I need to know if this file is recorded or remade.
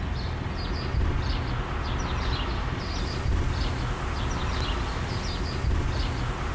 recorded